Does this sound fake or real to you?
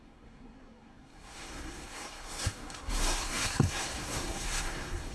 fake